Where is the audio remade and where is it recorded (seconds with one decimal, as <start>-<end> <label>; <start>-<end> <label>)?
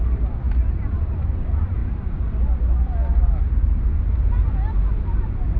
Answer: 0.0-5.6 recorded